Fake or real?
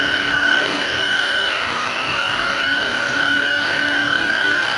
fake